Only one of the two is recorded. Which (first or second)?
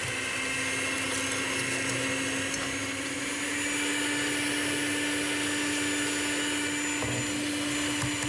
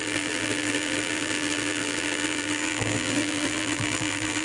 first